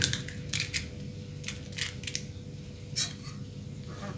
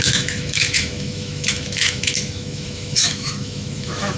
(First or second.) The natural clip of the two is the first